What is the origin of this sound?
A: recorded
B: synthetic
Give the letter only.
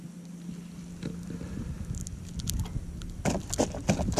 A